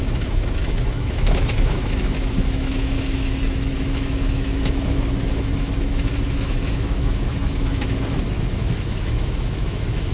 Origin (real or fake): fake